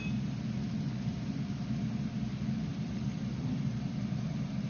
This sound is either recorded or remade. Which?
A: recorded